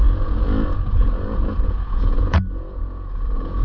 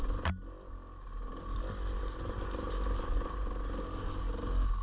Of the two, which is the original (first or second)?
second